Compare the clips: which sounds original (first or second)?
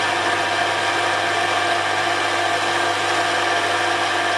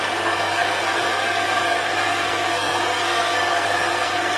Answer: first